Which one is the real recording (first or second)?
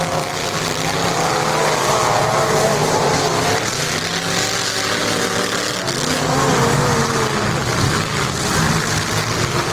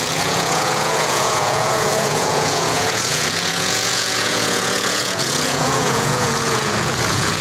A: first